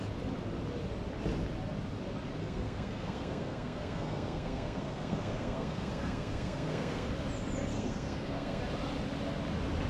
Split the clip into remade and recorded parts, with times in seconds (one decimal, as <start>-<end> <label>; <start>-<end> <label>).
0.0-2.4 recorded; 2.4-7.1 remade; 7.1-7.7 recorded; 7.7-8.6 remade; 8.6-9.9 recorded